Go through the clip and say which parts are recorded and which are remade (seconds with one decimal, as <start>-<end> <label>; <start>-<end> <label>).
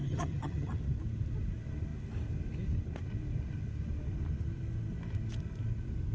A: 0.0-0.8 remade; 0.8-6.1 recorded